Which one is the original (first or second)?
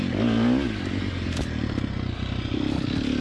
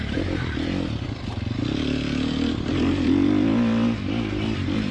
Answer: first